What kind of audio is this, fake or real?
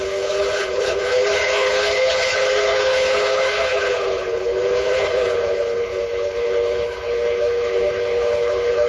fake